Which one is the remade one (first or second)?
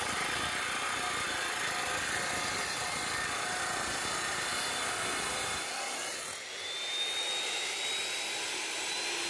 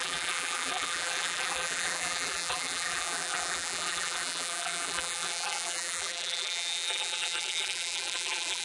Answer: second